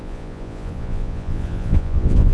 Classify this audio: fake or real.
fake